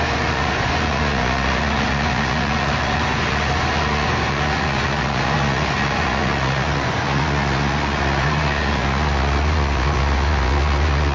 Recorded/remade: remade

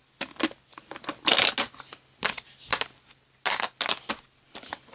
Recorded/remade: recorded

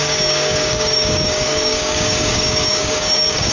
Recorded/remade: remade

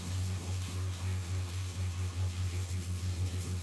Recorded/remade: remade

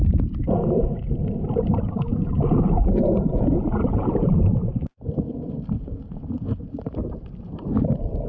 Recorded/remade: remade